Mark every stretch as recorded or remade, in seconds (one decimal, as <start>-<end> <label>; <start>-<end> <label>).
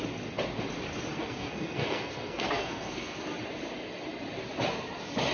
0.0-1.1 recorded; 1.1-3.2 remade; 3.2-5.3 recorded